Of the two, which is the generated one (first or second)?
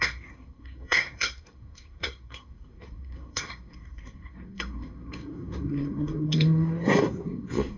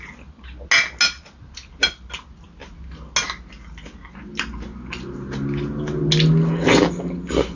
first